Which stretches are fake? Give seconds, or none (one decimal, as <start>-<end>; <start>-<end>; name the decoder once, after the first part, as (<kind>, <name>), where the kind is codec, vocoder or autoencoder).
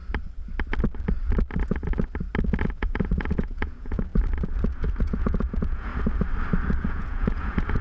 2.6-4.1 (vocoder, Vocos); 5.0-5.9; 6.9-7.8